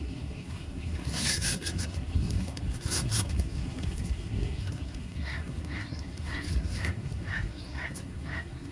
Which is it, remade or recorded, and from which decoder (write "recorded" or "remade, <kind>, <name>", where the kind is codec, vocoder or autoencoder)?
remade, codec, SNAC